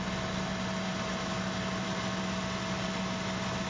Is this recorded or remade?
recorded